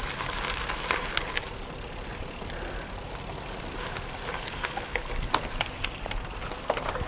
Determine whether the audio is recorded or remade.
recorded